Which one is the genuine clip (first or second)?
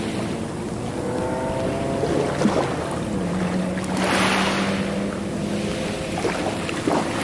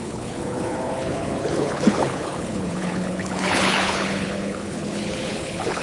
first